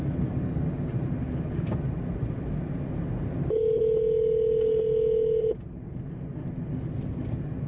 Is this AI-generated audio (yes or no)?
no